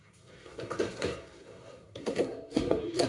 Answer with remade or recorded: remade